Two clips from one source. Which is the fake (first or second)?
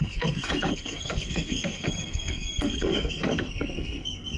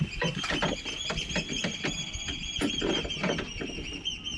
first